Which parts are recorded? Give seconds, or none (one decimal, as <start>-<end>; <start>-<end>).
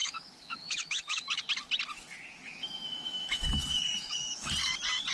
1.4-2.6; 4.5-5.1